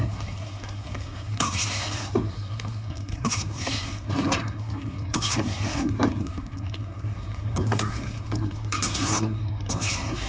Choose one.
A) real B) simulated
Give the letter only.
B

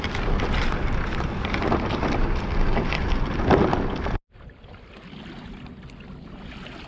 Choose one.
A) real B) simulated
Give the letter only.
A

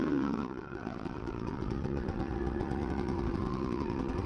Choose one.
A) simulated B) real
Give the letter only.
A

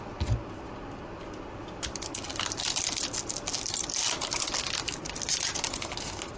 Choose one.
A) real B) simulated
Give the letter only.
A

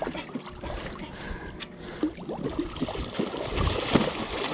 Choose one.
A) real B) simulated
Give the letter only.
A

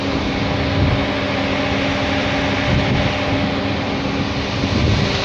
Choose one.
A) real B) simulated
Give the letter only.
A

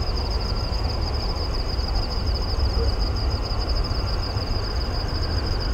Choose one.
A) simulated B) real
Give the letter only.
B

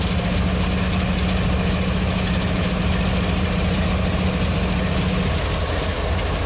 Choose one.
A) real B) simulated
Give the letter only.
A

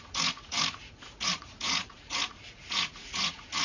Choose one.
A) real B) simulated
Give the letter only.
B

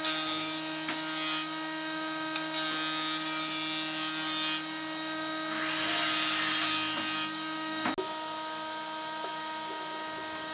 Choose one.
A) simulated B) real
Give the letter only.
B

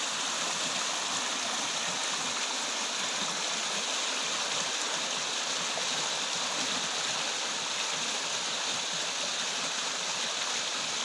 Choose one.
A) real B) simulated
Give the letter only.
A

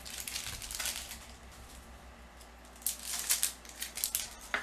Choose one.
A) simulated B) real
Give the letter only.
B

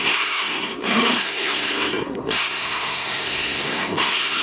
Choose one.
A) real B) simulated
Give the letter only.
B